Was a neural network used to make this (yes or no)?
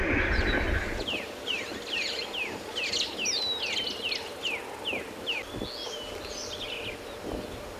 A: no